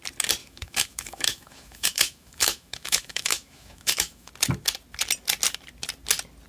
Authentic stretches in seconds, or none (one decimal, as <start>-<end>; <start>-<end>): 0.0-0.4; 4.3-6.5